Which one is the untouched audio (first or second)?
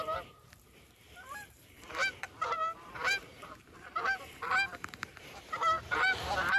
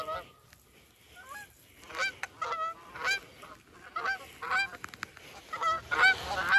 second